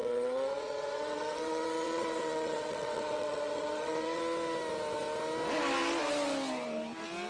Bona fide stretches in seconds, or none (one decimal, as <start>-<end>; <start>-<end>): 4.2-7.3